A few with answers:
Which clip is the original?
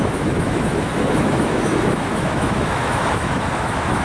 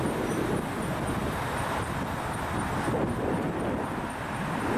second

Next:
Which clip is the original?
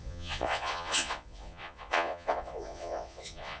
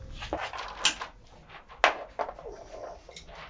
second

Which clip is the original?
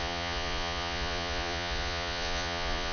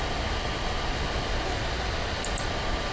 second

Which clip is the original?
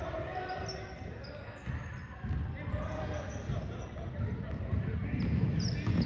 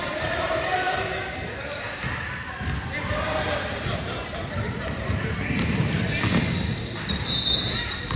first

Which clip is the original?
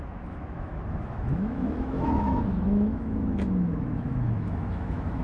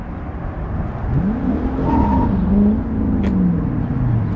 second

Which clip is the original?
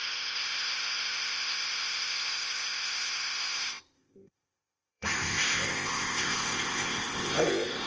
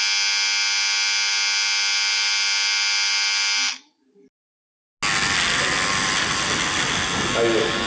second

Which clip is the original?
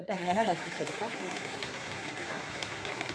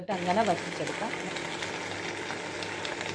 second